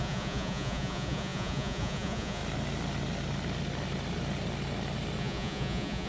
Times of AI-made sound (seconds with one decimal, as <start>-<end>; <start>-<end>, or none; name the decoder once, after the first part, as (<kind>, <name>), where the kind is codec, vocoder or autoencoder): 0.0-2.4 (vocoder, Vocos); 5.2-6.1